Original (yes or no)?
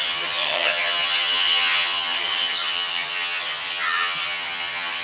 no